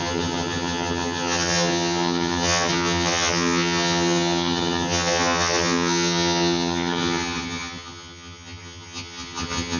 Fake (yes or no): yes